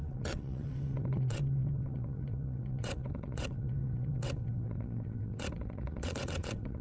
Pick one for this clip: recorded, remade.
remade